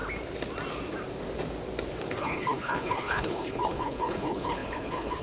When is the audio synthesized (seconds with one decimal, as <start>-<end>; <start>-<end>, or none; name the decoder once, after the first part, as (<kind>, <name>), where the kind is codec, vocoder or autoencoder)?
2.2-5.2 (codec, HILCodec)